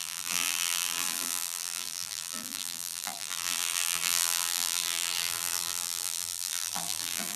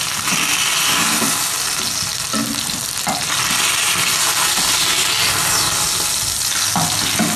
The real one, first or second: second